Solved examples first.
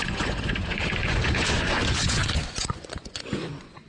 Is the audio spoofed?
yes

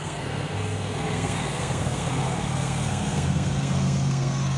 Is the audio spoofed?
yes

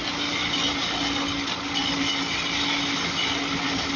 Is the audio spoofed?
no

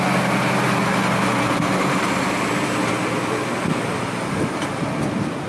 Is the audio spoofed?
no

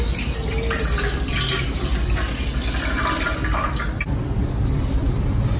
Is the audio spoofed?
no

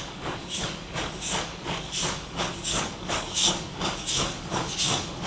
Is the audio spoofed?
yes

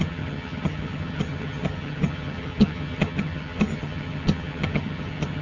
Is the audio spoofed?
yes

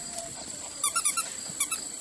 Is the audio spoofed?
yes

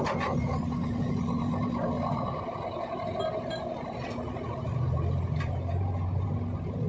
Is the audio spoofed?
no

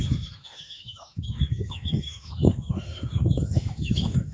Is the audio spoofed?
yes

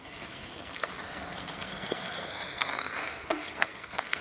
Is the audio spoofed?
yes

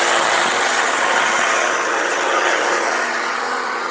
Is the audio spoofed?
yes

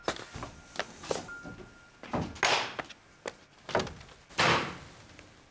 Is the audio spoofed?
no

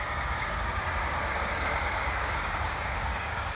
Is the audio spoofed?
yes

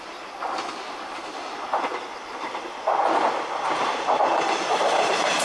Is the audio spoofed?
no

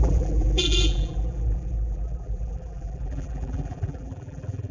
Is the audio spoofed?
yes